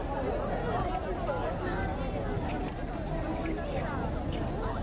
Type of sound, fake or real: real